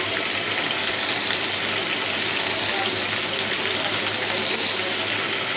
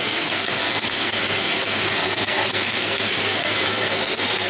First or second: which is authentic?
first